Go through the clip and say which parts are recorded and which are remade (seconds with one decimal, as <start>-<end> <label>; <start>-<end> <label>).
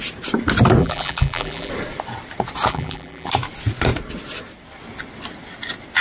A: 0.0-0.8 recorded; 0.8-1.7 remade; 1.7-2.7 recorded; 2.7-3.3 remade; 3.3-6.0 recorded